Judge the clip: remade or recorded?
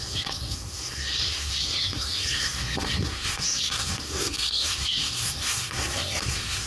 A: remade